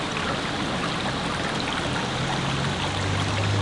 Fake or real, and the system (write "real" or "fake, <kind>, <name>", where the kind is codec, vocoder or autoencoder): real